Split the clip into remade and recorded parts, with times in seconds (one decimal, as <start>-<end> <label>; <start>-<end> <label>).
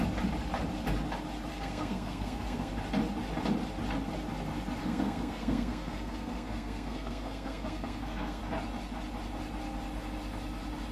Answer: 0.0-1.5 recorded; 1.5-2.7 remade; 2.7-4.8 recorded; 4.8-8.4 remade; 8.4-10.9 recorded